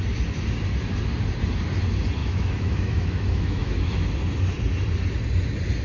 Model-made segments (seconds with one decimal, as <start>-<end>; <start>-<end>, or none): 2.2-4.1